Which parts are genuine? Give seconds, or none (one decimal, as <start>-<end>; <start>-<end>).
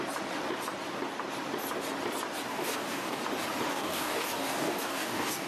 0.0-2.5; 3.2-3.7